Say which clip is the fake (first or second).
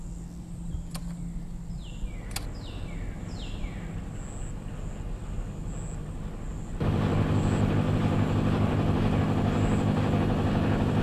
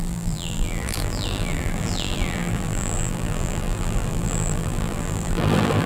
second